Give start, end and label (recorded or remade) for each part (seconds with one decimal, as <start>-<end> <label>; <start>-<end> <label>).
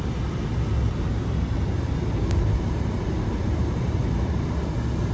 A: 0.0-1.1 recorded; 1.1-4.0 remade; 4.0-5.1 recorded